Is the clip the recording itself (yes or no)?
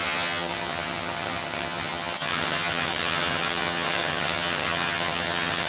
no